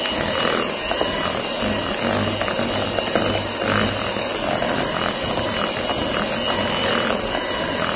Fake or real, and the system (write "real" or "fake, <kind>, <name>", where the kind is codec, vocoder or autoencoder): real